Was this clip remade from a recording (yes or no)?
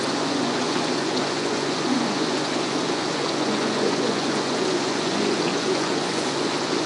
yes